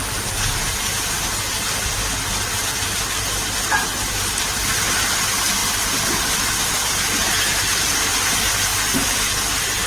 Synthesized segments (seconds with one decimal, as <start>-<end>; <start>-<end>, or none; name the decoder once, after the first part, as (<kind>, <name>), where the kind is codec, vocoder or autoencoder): 5.6-6.9 (vocoder, BigVGAN v2)